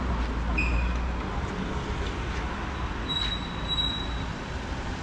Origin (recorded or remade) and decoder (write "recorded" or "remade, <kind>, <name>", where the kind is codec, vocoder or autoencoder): recorded